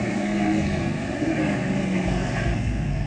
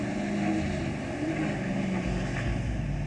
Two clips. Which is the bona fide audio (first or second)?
second